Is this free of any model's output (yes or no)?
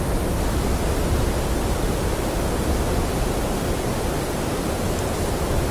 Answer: yes